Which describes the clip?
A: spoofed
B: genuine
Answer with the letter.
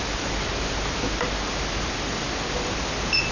B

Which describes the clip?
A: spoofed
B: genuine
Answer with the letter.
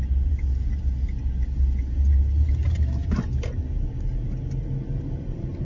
B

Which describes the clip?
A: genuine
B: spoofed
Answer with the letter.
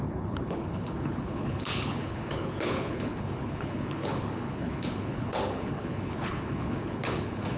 B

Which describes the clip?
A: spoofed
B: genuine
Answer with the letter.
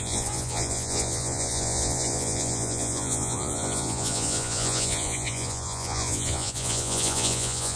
A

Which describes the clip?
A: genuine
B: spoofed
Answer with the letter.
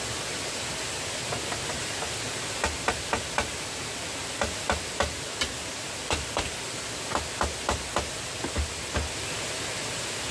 A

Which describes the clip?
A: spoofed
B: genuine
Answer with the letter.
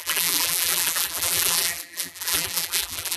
A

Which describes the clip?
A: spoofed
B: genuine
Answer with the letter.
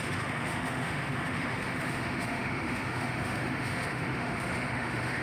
A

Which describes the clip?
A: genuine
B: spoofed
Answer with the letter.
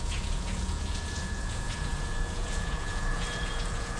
B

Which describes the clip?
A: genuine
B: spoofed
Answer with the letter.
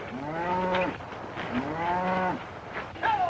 A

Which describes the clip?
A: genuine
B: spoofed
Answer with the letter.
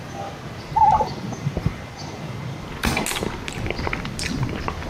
A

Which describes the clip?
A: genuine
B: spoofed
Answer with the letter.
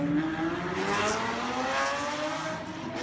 A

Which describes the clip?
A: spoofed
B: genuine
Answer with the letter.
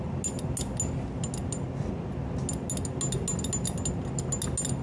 B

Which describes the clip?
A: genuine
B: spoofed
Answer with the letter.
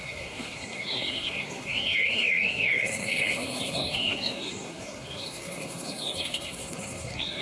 B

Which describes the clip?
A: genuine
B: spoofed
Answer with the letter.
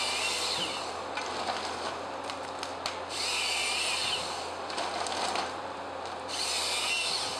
A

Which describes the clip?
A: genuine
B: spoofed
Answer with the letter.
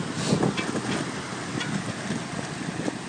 A